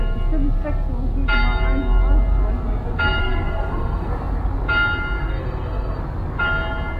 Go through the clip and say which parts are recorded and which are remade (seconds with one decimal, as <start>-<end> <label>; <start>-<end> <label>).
0.0-3.2 recorded; 3.2-4.1 remade; 4.1-5.2 recorded; 5.2-6.0 remade; 6.0-7.0 recorded